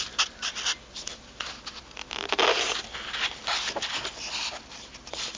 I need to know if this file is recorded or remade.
recorded